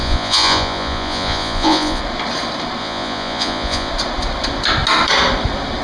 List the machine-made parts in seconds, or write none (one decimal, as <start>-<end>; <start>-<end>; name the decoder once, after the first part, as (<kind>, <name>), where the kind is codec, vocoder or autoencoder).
0.0-2.0 (vocoder, Vocos); 2.8-3.9